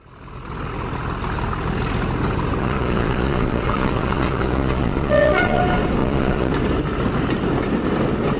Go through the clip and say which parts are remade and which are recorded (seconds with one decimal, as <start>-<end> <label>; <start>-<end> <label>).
0.0-2.6 recorded; 2.6-5.6 remade; 5.6-6.0 recorded; 6.0-6.5 remade; 6.5-8.4 recorded

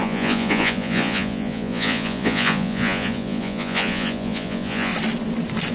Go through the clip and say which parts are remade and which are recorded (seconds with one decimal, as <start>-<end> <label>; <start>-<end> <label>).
0.0-4.9 remade; 4.9-5.7 recorded